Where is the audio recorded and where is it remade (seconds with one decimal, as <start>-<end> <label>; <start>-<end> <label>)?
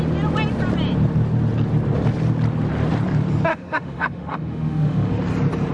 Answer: 0.0-3.5 recorded; 3.5-5.1 remade; 5.1-5.7 recorded